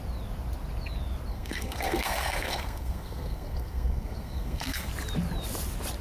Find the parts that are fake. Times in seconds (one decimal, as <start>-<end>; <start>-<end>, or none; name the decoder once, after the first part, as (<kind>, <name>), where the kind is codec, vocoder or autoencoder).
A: 1.3-4.9 (codec, SNAC)